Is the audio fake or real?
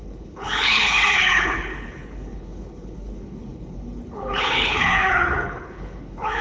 fake